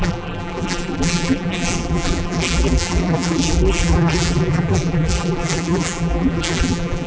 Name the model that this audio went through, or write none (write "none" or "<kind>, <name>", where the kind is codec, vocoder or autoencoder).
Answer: vocoder, BigVGAN v2